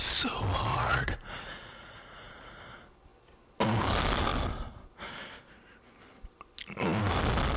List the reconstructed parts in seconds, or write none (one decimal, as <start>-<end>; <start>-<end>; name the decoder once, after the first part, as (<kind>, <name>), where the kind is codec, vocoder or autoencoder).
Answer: 0.7-2.6 (vocoder, Vocos)